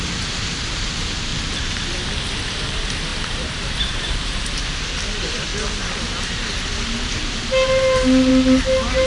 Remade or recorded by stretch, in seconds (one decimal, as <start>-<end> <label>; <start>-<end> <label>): 0.0-1.3 remade; 1.3-2.4 recorded; 2.4-5.5 remade; 5.5-6.7 recorded; 6.7-8.3 remade; 8.3-9.1 recorded